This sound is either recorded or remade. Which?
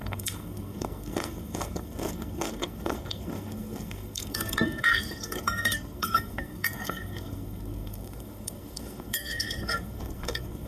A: remade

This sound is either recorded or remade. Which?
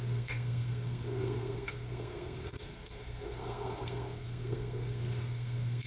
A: remade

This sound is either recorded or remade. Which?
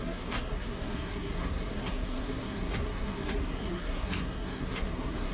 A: remade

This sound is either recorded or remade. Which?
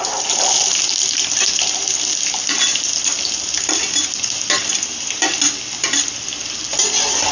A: recorded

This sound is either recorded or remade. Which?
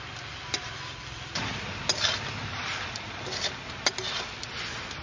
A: recorded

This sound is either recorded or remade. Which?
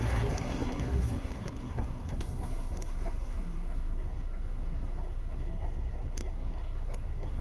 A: remade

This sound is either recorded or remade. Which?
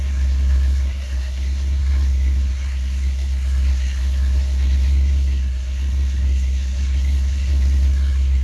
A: remade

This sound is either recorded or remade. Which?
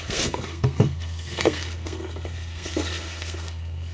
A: remade